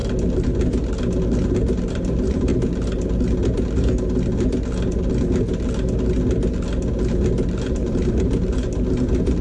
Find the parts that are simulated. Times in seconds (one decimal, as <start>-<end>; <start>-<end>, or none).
1.9-2.5; 7.6-9.4